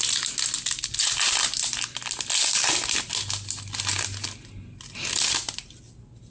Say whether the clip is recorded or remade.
recorded